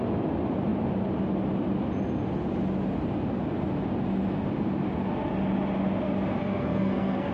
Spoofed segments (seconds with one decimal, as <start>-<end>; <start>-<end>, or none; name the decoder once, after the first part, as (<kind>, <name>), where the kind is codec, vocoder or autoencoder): 6.4-7.3 (codec, SNAC)